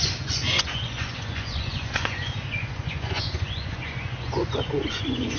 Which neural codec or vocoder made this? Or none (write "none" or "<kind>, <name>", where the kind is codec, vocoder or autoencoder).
vocoder, Vocos